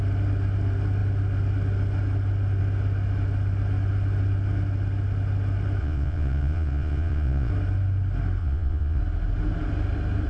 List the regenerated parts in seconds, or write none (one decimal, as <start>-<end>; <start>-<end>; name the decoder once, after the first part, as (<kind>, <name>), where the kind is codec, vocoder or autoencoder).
5.8-7.5 (vocoder, Vocos); 8.4-9.0